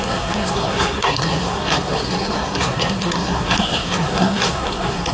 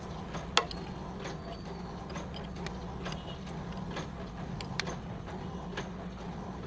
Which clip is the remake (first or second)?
first